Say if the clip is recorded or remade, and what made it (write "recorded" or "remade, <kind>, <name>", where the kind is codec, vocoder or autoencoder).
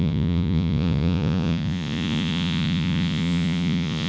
remade, vocoder, Vocos